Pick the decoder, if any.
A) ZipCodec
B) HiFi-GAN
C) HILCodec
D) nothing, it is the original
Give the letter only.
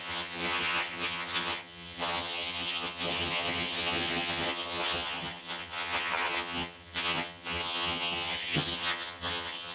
B